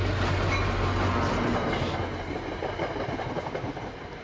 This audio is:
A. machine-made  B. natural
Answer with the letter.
B